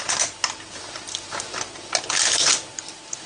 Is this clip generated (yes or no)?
no